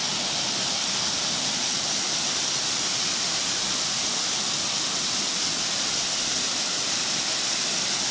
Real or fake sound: real